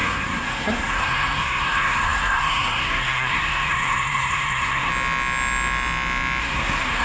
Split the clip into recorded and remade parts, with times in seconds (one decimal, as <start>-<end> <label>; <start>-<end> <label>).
0.0-4.9 remade; 4.9-6.4 recorded; 6.4-7.0 remade